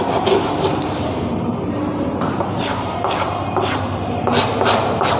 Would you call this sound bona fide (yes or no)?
yes